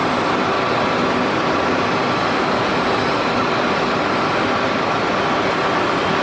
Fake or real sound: real